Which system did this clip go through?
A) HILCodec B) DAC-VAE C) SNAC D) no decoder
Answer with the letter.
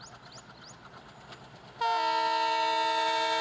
D